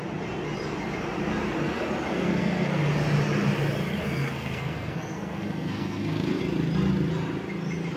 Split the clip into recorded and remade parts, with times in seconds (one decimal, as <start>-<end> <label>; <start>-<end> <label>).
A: 0.0-2.1 recorded; 2.1-2.8 remade; 2.8-4.0 recorded; 4.0-6.4 remade; 6.4-8.0 recorded